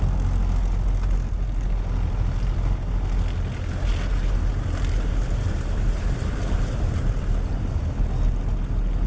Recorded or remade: recorded